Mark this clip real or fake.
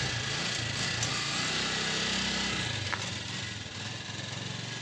real